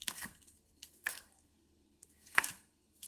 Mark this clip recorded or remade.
remade